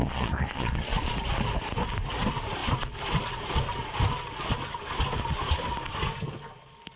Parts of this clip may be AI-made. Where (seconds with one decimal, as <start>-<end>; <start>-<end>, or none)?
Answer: 0.0-1.1